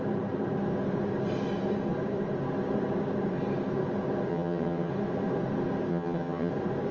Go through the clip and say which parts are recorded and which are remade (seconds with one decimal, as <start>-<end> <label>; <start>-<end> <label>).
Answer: 0.0-4.3 recorded; 4.3-4.9 remade; 4.9-5.9 recorded; 5.9-6.5 remade; 6.5-6.9 recorded